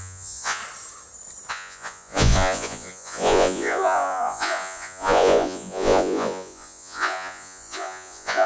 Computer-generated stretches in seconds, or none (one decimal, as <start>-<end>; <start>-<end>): 0.0-0.6; 1.5-8.5